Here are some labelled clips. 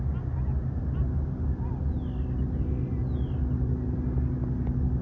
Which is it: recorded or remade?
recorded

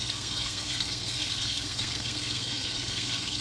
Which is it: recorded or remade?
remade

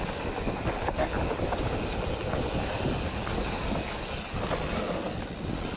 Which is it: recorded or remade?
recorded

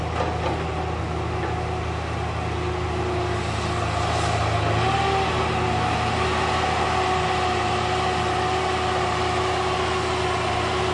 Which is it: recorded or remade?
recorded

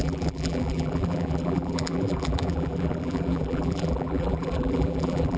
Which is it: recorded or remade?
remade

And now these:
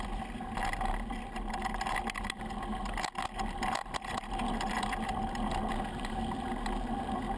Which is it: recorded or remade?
recorded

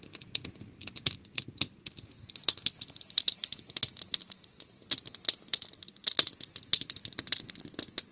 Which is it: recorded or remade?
recorded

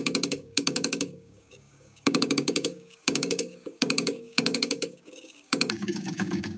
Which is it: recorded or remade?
remade